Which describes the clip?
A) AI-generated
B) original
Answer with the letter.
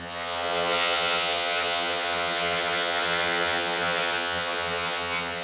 A